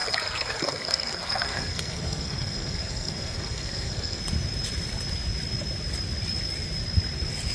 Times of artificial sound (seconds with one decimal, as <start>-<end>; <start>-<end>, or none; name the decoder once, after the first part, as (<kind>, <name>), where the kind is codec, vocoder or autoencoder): 0.0-4.2 (codec, SNAC)